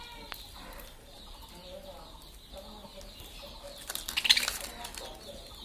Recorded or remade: recorded